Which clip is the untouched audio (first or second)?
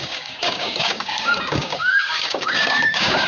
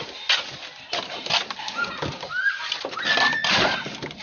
second